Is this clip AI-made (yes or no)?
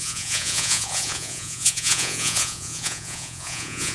yes